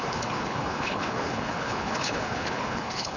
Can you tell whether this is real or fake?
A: fake